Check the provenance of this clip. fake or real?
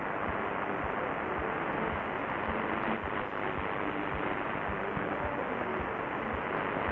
real